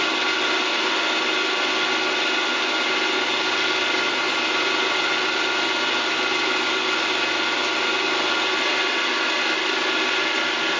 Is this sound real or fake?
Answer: real